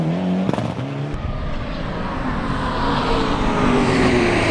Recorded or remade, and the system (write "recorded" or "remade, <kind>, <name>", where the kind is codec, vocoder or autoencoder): remade, vocoder, BigVGAN v2